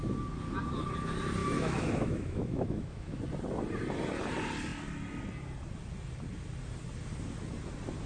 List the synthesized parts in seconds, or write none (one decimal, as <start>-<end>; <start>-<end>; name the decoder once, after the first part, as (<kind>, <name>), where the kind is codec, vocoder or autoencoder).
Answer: 1.4-3.2 (autoencoder, DAC-VAE)